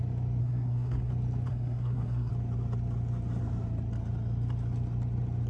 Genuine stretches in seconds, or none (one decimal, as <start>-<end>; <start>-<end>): 0.0-0.4; 1.1-1.5; 2.3-5.5